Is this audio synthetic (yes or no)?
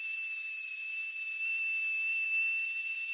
yes